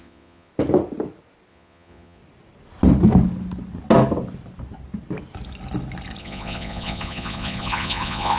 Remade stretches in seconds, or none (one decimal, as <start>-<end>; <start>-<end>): 0.0-0.5; 1.5-2.2; 6.2-8.4